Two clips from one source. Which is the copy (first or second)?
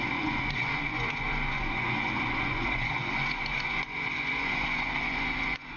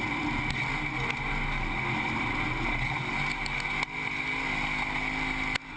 first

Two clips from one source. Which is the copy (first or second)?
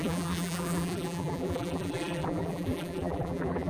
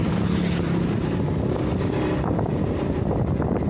first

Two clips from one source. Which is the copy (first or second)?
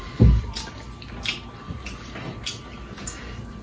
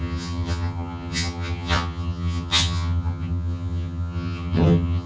second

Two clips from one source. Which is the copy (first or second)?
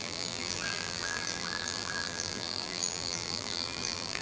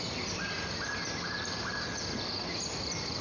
first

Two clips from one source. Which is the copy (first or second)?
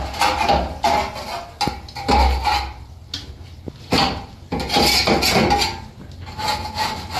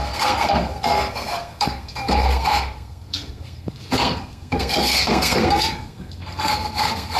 second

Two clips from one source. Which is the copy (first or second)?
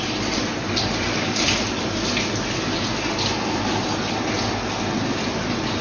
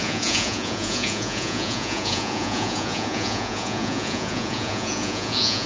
second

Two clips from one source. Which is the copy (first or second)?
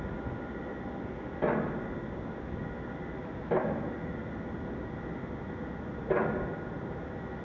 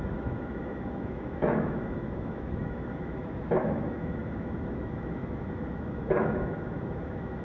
second